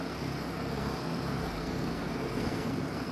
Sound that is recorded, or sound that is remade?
remade